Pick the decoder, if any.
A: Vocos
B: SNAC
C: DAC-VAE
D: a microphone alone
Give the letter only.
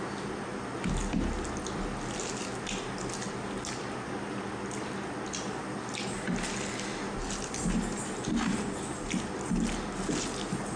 D